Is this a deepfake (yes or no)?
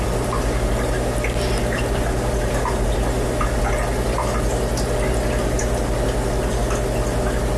no